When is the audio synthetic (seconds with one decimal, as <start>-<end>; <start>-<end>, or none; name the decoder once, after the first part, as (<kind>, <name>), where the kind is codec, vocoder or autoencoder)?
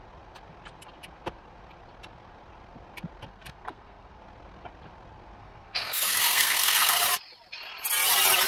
3.3-4.2 (codec, SNAC); 5.4-7.0